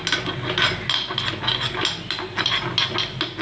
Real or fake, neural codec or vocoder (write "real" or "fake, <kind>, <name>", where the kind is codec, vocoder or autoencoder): real